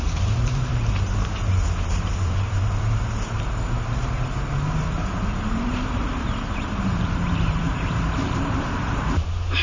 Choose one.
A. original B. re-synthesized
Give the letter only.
B